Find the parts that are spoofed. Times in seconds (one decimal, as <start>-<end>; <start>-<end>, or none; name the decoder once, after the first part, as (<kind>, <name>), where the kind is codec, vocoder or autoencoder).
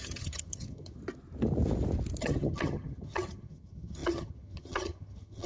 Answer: 0.0-1.0 (vocoder, HiFi-GAN); 2.2-5.5